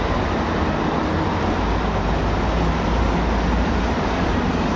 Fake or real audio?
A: fake